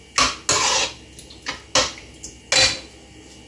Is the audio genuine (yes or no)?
yes